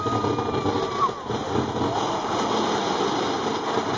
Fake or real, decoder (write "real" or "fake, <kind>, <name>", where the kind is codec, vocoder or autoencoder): real